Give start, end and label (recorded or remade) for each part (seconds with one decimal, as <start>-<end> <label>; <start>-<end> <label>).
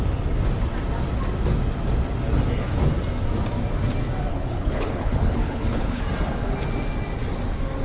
0.0-4.3 recorded; 4.3-6.0 remade; 6.0-7.8 recorded